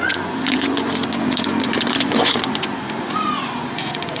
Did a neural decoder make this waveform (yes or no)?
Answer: yes